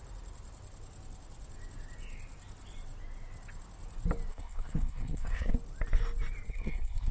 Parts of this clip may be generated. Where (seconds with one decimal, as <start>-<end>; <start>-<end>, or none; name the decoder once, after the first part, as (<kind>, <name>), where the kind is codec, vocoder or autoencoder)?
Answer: 4.3-5.5 (codec, SNAC); 6.5-7.1